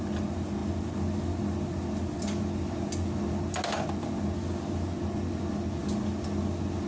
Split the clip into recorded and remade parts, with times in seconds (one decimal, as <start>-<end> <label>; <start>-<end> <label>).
0.0-6.9 recorded

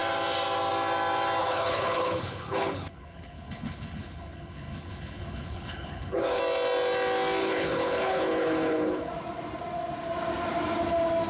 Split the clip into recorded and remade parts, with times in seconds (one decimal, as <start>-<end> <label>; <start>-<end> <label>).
0.0-1.4 recorded; 1.4-6.4 remade; 6.4-7.4 recorded; 7.4-9.1 remade; 9.1-11.3 recorded

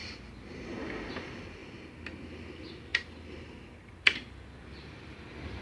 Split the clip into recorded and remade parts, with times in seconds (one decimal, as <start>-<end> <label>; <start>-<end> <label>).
0.0-2.9 recorded; 2.9-5.6 remade

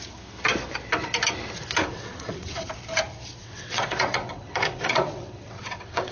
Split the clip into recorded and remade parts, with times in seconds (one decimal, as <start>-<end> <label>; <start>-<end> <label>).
0.0-1.8 recorded; 1.8-2.7 remade; 2.7-3.4 recorded; 3.4-6.1 remade

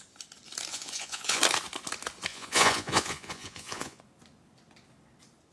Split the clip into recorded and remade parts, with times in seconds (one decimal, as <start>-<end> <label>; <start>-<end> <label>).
0.0-0.7 recorded; 0.7-1.4 remade; 1.4-2.3 recorded; 2.3-4.0 remade; 4.0-5.5 recorded

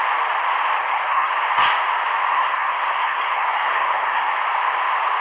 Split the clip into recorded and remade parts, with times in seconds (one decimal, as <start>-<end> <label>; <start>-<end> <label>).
0.0-0.8 recorded; 0.8-1.3 remade; 1.3-2.3 recorded; 2.3-4.3 remade; 4.3-5.2 recorded

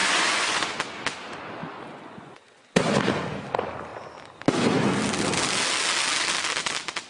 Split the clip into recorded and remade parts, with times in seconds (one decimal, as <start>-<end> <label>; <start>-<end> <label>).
0.0-0.7 remade; 0.7-1.6 recorded; 1.6-2.8 remade; 2.8-7.1 recorded

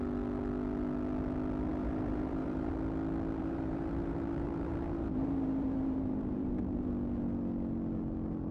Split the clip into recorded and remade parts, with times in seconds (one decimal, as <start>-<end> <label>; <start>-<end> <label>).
0.0-1.7 recorded; 1.7-2.7 remade; 2.7-3.4 recorded; 3.4-6.9 remade; 6.9-8.5 recorded